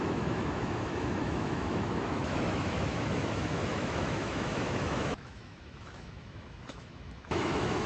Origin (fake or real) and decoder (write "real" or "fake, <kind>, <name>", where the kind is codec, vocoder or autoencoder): fake, autoencoder, DAC-VAE